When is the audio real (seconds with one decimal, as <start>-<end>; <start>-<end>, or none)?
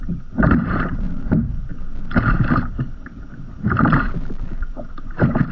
1.7-2.7